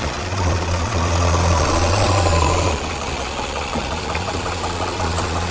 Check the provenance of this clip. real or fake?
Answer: fake